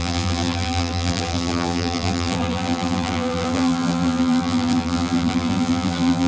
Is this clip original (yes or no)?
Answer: no